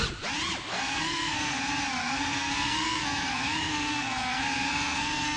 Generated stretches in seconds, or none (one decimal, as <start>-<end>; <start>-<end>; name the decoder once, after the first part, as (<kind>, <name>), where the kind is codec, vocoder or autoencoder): 0.7-1.6 (codec, SNAC); 2.0-5.4